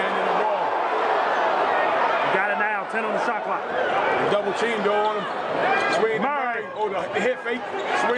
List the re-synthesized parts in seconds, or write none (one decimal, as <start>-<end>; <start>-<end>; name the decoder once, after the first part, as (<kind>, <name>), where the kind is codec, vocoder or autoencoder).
none